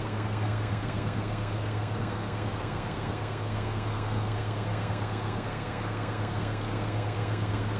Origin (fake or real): fake